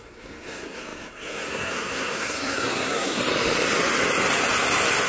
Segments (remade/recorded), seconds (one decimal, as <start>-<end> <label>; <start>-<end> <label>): 0.0-3.2 remade; 3.2-5.1 recorded